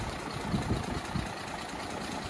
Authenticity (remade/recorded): recorded